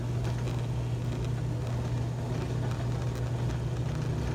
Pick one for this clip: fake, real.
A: real